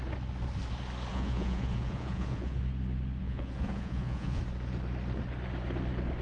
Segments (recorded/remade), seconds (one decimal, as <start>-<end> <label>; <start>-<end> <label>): 0.0-1.1 recorded; 1.1-2.6 remade; 2.6-3.2 recorded; 3.2-4.4 remade; 4.4-6.2 recorded